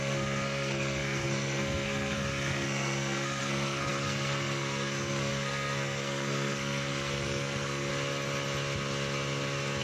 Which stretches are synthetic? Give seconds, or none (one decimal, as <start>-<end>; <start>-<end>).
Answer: 0.0-7.9